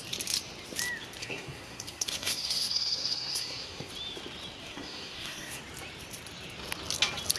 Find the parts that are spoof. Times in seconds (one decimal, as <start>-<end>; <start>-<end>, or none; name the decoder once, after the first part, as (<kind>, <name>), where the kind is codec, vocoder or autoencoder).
1.2-3.9 (codec, SNAC); 4.6-5.6